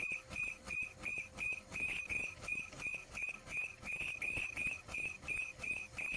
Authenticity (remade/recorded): recorded